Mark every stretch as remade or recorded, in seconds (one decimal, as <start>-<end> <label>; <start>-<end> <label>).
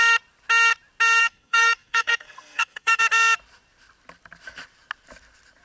0.0-1.2 recorded; 1.2-3.0 remade; 3.0-5.6 recorded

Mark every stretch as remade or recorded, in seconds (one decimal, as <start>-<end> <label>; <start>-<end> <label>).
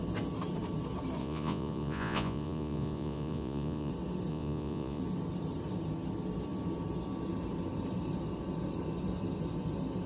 0.0-1.2 recorded; 1.2-3.9 remade; 3.9-4.3 recorded; 4.3-5.0 remade; 5.0-10.1 recorded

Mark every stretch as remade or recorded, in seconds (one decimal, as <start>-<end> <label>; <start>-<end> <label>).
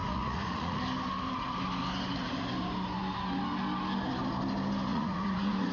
0.0-0.8 remade; 0.8-4.9 recorded; 4.9-5.7 remade